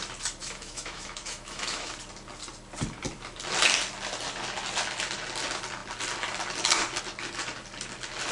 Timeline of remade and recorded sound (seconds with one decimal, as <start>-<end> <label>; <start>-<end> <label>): 0.0-0.4 recorded; 0.4-1.9 remade; 1.9-8.3 recorded